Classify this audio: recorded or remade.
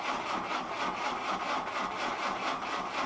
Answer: recorded